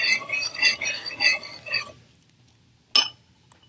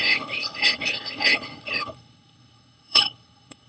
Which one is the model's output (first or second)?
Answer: second